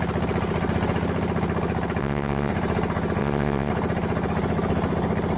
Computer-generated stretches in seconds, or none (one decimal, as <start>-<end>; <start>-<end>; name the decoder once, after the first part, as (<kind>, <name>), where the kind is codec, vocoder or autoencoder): 2.0-2.5 (vocoder, WaveNeXt); 3.2-3.7